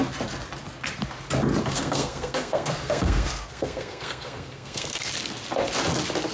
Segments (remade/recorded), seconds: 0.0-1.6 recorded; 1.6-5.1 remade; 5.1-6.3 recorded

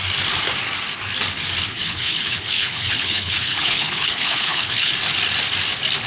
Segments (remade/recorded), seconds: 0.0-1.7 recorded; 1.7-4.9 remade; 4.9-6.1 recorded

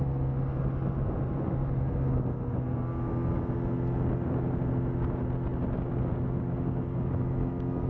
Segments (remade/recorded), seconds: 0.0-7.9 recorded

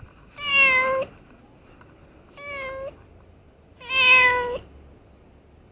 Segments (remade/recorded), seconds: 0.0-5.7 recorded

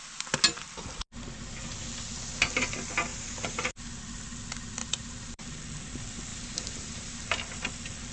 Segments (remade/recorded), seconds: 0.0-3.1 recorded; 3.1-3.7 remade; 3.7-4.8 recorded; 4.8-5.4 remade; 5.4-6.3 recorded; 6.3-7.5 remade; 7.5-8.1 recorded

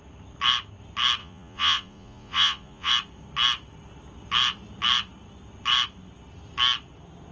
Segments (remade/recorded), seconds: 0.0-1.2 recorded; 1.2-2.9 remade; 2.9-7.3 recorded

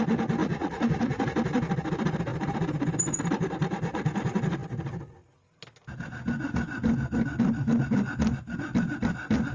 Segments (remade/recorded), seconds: 0.0-0.4 recorded; 0.4-1.2 remade; 1.2-9.5 recorded

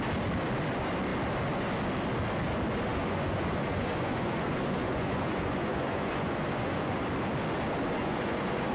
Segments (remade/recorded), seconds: 0.0-2.9 recorded; 2.9-7.0 remade; 7.0-8.0 recorded; 8.0-8.7 remade